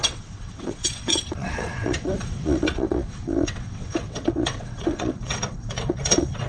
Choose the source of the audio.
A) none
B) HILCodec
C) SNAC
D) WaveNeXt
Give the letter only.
D